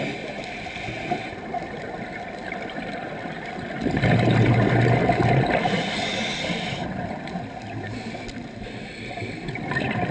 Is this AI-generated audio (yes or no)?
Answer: no